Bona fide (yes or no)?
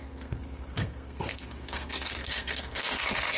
no